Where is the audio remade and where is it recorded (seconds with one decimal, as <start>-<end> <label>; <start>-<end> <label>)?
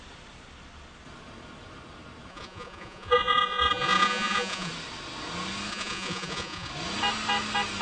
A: 0.0-2.3 recorded; 2.3-4.7 remade; 4.7-5.7 recorded; 5.7-6.7 remade; 6.7-7.8 recorded